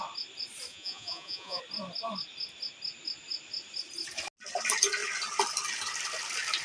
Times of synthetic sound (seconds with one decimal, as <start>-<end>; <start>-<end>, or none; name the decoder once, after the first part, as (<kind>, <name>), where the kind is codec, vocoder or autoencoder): 0.7-1.6 (vocoder, Vocos)